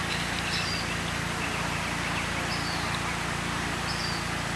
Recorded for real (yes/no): yes